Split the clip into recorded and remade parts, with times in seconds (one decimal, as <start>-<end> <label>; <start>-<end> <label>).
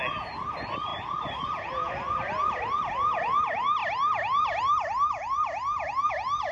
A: 0.0-3.8 recorded; 3.8-6.1 remade; 6.1-6.5 recorded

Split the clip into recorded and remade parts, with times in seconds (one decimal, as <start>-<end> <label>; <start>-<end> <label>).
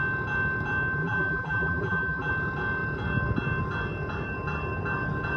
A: 0.0-1.0 recorded; 1.0-2.3 remade; 2.3-5.4 recorded